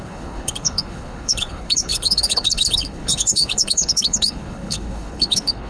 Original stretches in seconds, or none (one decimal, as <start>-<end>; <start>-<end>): none